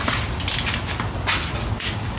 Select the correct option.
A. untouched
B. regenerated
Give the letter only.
A